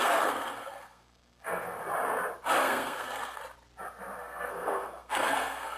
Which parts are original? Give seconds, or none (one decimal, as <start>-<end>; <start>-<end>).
1.8-2.6; 3.4-4.2